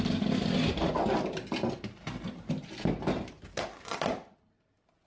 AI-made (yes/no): no